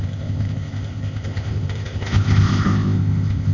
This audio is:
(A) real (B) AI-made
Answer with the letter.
B